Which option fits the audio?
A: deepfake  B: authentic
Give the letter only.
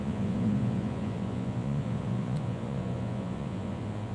A